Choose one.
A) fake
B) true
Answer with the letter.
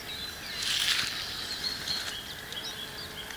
B